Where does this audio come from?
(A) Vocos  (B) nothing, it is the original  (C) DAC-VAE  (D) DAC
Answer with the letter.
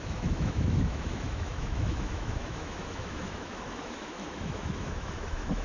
C